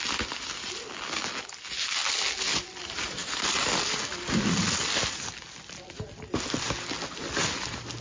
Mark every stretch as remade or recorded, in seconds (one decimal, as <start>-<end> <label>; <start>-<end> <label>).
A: 0.0-8.0 recorded